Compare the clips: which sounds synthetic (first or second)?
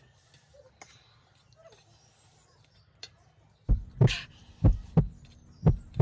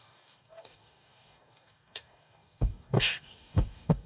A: second